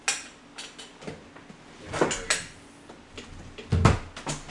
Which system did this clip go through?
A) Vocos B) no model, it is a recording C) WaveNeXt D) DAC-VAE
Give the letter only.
B